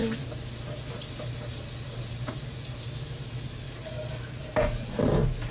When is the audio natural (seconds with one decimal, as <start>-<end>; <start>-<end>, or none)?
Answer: 0.0-5.5

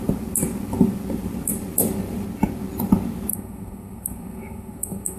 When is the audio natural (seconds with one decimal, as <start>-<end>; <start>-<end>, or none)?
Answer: 0.0-3.3

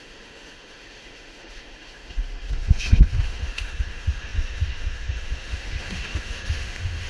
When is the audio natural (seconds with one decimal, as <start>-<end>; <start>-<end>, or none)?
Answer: none

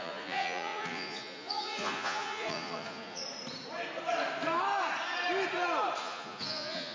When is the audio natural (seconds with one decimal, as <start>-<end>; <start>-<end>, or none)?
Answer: 3.2-6.0